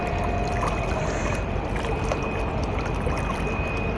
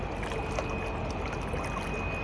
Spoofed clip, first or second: first